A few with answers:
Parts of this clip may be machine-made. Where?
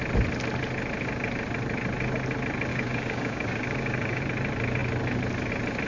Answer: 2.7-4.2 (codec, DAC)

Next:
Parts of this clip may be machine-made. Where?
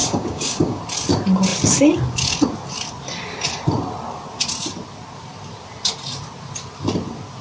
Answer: 0.0-0.8 (codec, DAC)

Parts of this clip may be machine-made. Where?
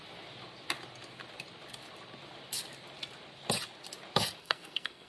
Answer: 4.4-5.1 (codec, SNAC)